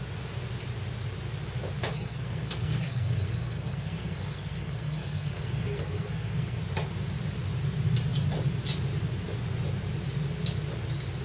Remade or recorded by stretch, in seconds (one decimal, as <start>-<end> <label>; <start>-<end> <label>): 0.0-1.9 recorded; 1.9-6.6 remade; 6.6-11.2 recorded